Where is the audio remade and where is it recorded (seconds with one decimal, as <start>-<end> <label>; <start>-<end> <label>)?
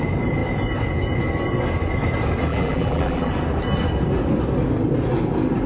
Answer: 0.0-2.5 recorded; 2.5-3.3 remade; 3.3-5.7 recorded